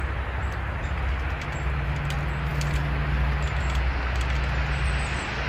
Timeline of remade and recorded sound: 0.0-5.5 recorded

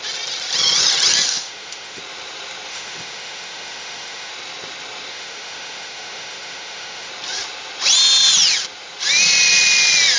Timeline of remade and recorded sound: 0.0-1.3 recorded; 1.3-2.0 remade; 2.0-2.7 recorded; 2.7-4.3 remade; 4.3-5.1 recorded; 5.1-7.1 remade; 7.1-10.2 recorded

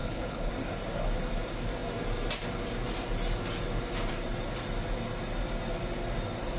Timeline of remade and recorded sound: 0.0-0.5 remade; 0.5-6.6 recorded

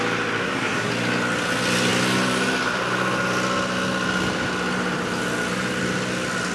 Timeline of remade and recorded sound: 0.0-0.4 recorded; 0.4-0.9 remade; 0.9-6.5 recorded

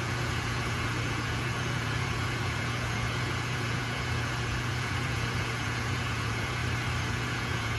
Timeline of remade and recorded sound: 0.0-6.6 remade; 6.6-7.1 recorded; 7.1-7.8 remade

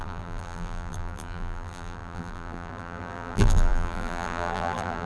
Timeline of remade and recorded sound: 0.0-5.1 remade

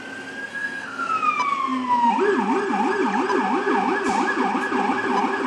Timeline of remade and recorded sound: 0.0-0.5 recorded; 0.5-1.1 remade; 1.1-5.5 recorded

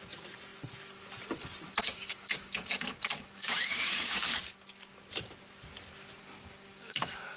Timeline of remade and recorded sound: 0.0-1.8 recorded; 1.8-4.5 remade; 4.5-6.2 recorded; 6.2-7.4 remade